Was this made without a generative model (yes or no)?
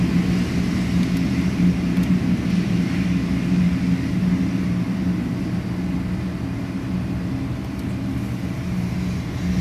yes